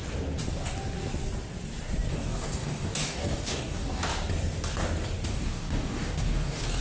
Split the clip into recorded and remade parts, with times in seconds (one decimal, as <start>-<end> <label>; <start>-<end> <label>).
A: 0.0-2.1 recorded; 2.1-4.1 remade; 4.1-5.3 recorded; 5.3-6.8 remade